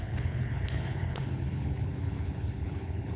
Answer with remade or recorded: remade